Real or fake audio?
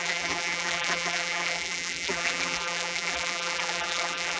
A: fake